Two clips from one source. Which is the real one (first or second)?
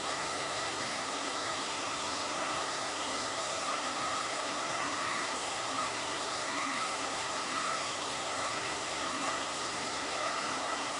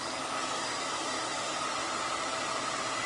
second